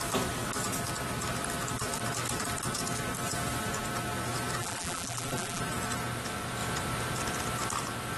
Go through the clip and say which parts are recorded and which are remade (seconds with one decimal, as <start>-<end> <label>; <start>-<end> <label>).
0.0-4.6 recorded; 4.6-5.6 remade; 5.6-8.2 recorded